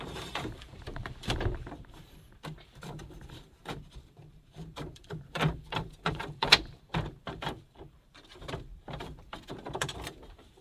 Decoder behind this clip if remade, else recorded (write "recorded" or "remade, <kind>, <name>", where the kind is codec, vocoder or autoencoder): remade, vocoder, BigVGAN v2